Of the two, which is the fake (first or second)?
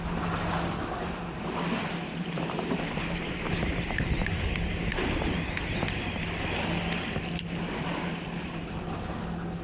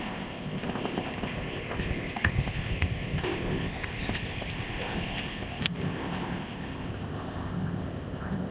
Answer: second